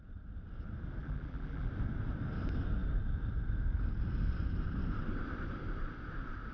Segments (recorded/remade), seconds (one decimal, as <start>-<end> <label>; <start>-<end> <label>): 0.0-1.0 recorded; 1.0-1.7 remade; 1.7-6.5 recorded